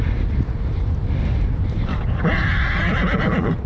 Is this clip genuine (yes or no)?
yes